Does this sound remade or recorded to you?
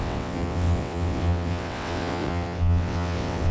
remade